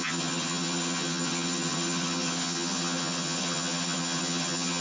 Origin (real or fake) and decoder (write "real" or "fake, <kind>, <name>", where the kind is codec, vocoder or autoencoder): fake, vocoder, HiFi-GAN